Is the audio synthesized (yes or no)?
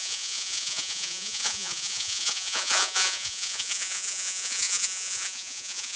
yes